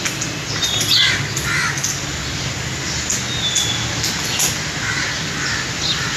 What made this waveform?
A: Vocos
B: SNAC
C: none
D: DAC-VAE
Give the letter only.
C